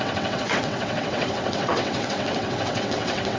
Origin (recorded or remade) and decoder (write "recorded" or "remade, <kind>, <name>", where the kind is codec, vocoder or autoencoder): remade, vocoder, WaveNeXt